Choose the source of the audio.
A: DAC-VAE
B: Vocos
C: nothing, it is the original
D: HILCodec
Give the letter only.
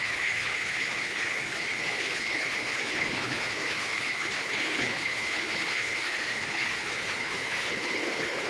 D